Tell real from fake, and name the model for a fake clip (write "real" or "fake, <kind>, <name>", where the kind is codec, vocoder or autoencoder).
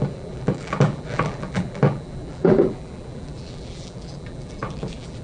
fake, vocoder, BigVGAN v2